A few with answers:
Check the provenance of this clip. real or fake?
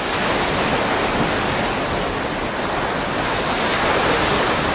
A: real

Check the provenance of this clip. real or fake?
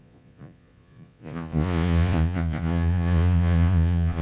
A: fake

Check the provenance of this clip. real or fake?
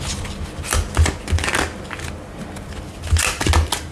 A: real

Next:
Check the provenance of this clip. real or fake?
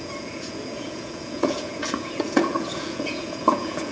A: fake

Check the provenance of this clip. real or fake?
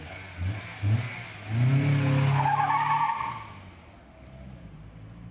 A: real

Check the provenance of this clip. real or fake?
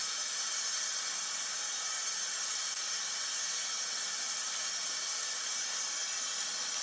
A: real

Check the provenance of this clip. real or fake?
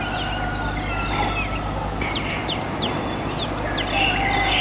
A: real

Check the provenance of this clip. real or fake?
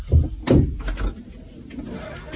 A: real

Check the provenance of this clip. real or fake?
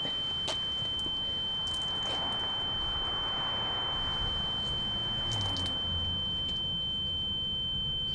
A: real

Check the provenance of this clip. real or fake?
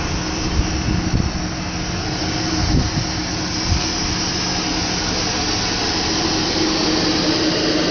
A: real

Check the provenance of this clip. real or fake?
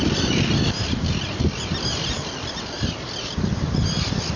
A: real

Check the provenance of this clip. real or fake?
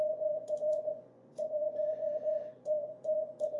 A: fake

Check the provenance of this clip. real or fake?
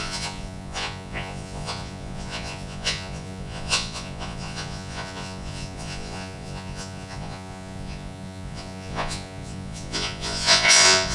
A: fake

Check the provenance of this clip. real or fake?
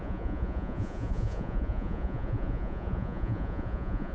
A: fake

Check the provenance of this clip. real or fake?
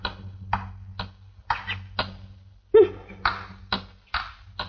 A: real